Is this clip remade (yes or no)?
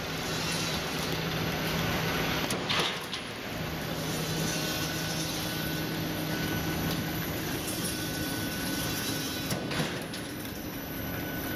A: no